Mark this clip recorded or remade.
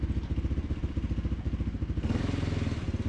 recorded